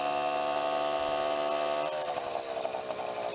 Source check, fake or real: real